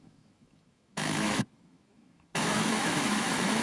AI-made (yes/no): yes